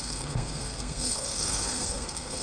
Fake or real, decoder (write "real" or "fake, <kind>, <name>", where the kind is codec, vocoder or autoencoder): fake, codec, SNAC